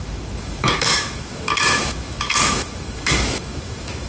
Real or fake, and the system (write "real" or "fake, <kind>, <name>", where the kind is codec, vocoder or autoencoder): fake, autoencoder, DAC-VAE